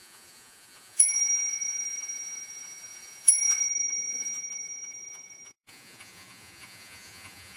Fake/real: fake